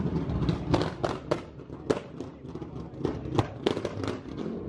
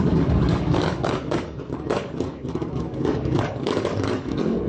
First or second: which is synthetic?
second